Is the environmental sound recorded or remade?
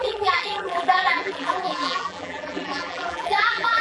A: remade